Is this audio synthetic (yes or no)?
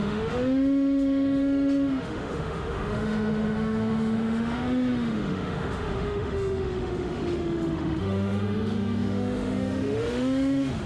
yes